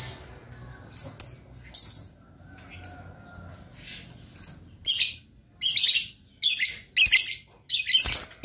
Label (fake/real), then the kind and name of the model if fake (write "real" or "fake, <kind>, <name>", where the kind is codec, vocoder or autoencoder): real